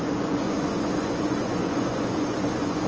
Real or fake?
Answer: fake